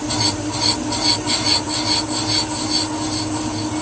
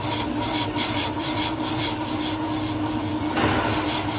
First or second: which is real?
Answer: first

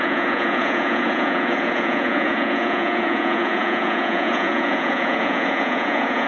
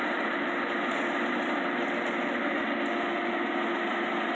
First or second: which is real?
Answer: second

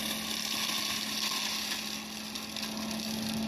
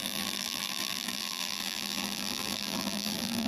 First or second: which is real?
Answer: first